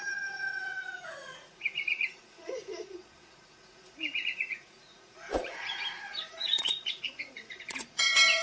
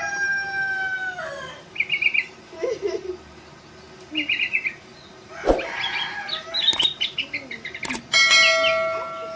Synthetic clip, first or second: first